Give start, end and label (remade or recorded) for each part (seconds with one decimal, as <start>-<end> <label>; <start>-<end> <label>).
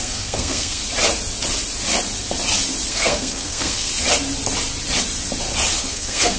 0.0-0.8 remade; 0.8-2.9 recorded; 2.9-3.9 remade; 3.9-5.8 recorded; 5.8-6.4 remade